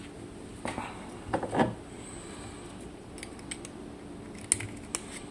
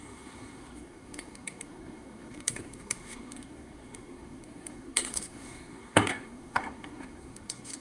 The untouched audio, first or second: first